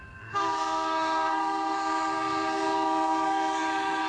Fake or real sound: fake